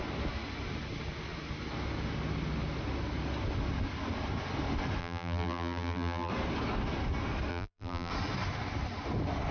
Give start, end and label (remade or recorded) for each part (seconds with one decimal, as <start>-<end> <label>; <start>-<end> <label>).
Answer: 0.0-5.0 recorded; 5.0-6.3 remade; 6.3-7.5 recorded; 7.5-8.1 remade; 8.1-9.5 recorded